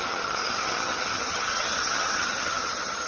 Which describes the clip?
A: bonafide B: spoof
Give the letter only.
B